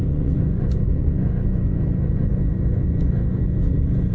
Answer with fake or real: fake